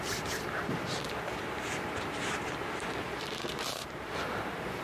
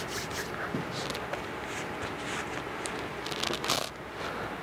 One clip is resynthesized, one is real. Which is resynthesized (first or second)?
first